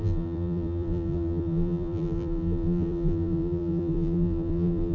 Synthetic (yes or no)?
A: yes